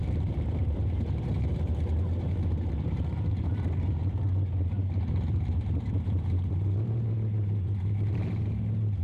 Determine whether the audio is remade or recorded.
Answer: remade